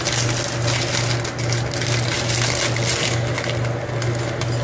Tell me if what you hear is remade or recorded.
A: recorded